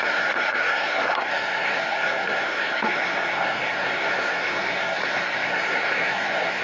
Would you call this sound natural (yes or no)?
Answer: no